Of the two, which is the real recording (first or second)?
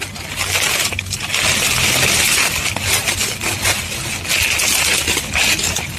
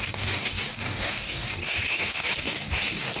first